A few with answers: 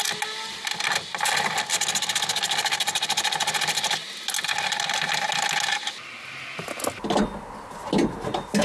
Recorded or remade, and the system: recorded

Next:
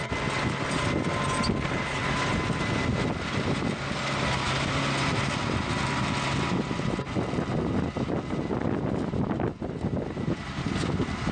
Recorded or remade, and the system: recorded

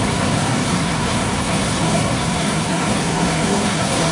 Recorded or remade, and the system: remade, codec, SNAC